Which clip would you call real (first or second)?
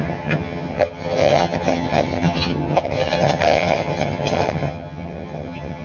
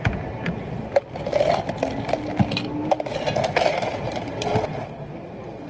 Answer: second